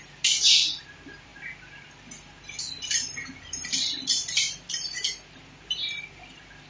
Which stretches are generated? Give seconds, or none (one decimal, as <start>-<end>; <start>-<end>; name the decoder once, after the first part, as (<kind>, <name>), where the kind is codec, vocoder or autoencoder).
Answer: none